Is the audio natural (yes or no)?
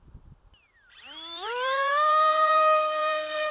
no